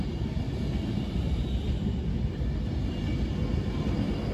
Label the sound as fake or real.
real